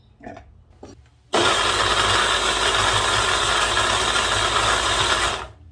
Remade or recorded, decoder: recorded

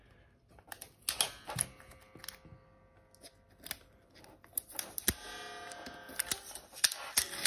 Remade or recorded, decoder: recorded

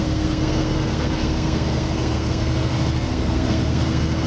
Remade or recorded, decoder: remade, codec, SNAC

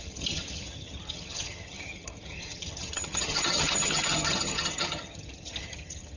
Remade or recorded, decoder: remade, vocoder, HiFi-GAN